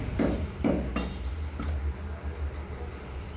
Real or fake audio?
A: real